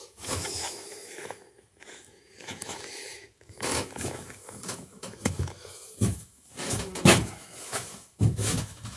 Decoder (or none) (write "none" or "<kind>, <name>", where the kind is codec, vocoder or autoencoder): autoencoder, DAC-VAE